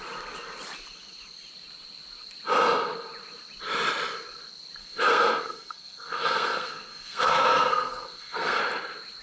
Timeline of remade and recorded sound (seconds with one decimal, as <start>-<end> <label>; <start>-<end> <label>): 0.0-4.8 recorded; 4.8-8.6 remade; 8.6-9.2 recorded